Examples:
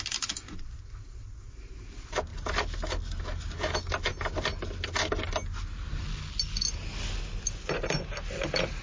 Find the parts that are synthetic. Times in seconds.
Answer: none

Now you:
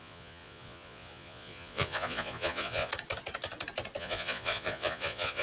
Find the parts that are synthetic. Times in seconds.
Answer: 0.0-2.9 (vocoder, Vocos); 4.0-5.4

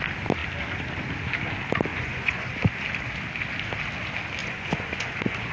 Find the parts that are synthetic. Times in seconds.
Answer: 1.9-2.6 (vocoder, Vocos); 4.4-5.5

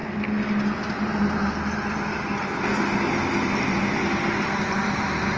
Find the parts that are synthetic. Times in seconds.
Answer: none

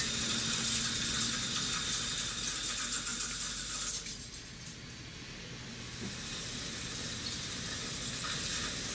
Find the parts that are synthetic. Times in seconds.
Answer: none

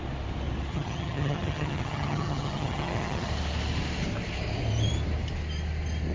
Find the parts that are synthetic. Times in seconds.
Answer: 0.7-3.3 (vocoder, HiFi-GAN)

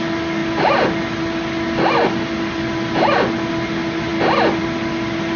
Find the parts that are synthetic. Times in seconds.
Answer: none